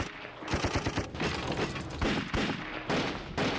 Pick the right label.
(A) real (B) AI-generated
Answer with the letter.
A